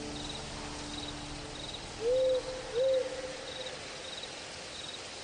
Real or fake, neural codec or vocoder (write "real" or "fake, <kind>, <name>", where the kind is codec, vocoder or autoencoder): real